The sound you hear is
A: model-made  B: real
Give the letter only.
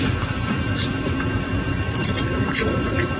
A